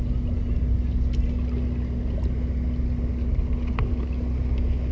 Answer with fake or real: real